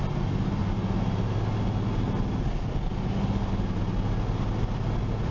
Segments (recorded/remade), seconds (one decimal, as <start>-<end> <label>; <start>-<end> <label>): 0.0-5.3 recorded